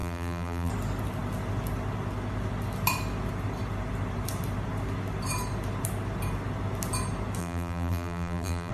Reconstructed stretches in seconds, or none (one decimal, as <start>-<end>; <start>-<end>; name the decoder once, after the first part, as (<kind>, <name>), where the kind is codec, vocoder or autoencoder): 0.0-0.7 (vocoder, BigVGAN v2); 7.4-8.7